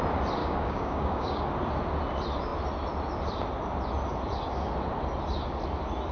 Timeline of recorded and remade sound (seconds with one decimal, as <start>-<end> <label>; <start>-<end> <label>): 0.0-0.4 recorded; 0.4-1.5 remade; 1.5-6.1 recorded